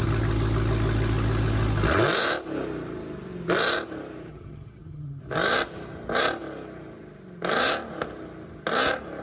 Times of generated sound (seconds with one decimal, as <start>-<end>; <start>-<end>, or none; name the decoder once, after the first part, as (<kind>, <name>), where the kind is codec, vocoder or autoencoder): 4.3-5.2 (vocoder, HiFi-GAN)